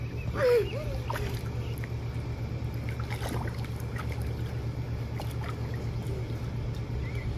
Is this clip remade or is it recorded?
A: recorded